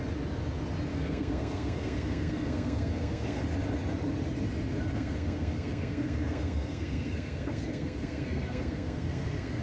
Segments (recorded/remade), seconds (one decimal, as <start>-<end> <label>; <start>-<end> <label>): 0.0-0.9 recorded; 0.9-3.4 remade; 3.4-4.9 recorded; 4.9-9.6 remade